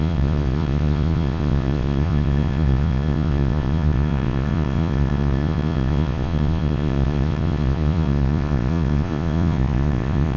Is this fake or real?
fake